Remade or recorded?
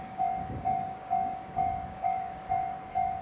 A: remade